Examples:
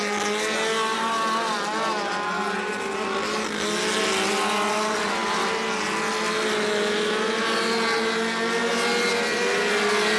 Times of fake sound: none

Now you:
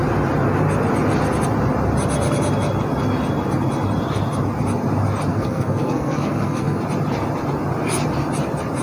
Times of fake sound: 5.3-6.8 (codec, SNAC)

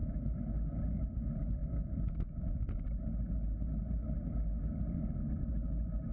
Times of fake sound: none

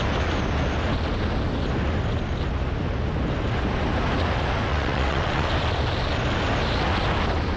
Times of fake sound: 4.7-5.5 (vocoder, WaveNeXt)